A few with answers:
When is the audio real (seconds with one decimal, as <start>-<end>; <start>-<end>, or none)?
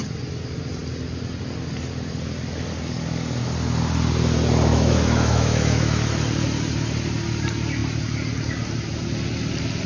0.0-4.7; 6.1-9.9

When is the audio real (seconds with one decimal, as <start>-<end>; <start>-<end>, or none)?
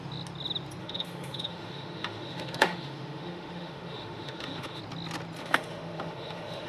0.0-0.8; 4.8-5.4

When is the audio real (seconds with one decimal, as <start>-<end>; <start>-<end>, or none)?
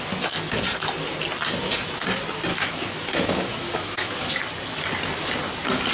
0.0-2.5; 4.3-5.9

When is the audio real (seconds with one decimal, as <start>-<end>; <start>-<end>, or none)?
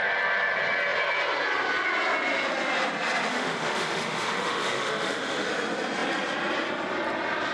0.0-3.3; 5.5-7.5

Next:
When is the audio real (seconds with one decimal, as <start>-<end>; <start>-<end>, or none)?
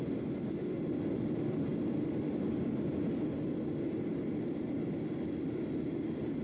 0.0-6.4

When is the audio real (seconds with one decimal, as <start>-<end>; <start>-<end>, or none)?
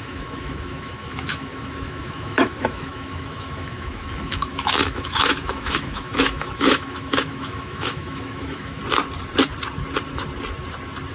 8.8-11.1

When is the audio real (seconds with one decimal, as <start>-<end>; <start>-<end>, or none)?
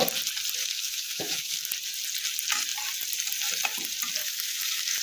0.0-0.6; 1.7-4.2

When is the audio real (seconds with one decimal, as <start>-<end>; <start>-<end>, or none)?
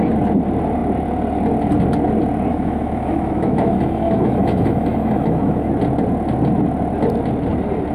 0.0-2.5; 5.7-7.9